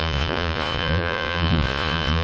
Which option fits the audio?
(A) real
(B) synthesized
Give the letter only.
B